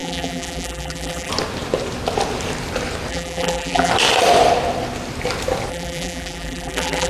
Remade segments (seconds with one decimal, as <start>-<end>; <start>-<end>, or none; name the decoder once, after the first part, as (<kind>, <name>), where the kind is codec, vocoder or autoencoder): 0.0-1.3 (vocoder, BigVGAN v2); 3.1-3.9; 5.7-7.1